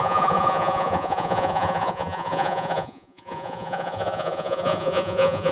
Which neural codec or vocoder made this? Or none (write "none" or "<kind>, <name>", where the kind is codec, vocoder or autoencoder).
vocoder, Vocos